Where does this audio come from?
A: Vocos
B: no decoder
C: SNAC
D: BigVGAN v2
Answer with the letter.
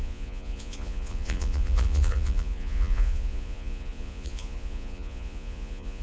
A